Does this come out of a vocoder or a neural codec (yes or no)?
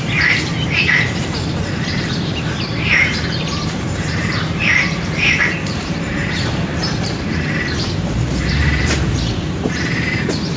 yes